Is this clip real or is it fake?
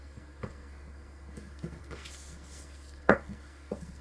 fake